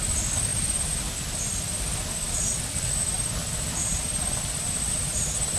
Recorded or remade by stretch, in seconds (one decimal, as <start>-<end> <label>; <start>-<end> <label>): 0.0-5.6 recorded